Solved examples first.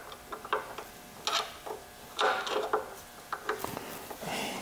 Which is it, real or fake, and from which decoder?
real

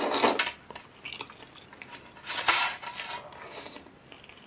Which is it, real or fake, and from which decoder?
real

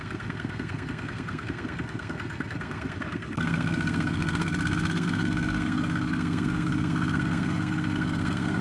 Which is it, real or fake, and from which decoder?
fake, codec, SNAC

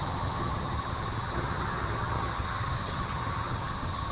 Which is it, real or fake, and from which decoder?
fake, vocoder, HiFi-GAN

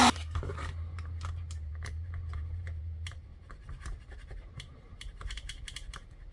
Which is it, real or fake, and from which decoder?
fake, vocoder, BigVGAN v2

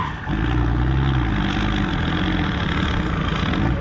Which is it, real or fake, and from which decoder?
real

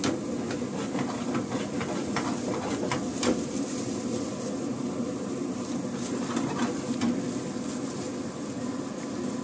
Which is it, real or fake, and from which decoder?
real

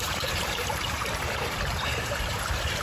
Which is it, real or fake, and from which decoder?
fake, vocoder, BigVGAN v2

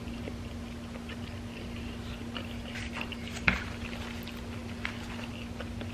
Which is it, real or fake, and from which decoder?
real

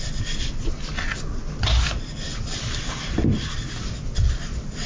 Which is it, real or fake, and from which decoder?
real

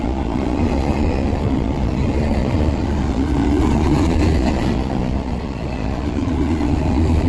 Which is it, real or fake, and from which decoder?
fake, vocoder, Vocos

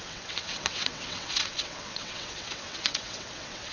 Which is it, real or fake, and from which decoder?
fake, vocoder, WaveNeXt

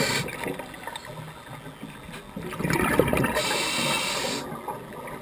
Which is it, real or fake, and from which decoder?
real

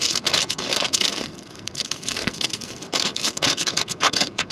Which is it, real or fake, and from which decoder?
fake, codec, SNAC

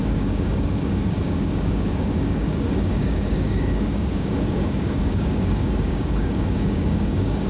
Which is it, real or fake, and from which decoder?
fake, codec, DAC